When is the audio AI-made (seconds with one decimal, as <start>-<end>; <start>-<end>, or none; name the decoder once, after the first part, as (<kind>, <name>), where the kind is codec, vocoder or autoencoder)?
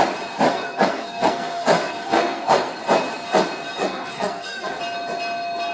0.5-2.8 (codec, SNAC); 3.8-4.8